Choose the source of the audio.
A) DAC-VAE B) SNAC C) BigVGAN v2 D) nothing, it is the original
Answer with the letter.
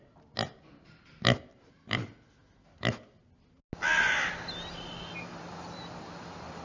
D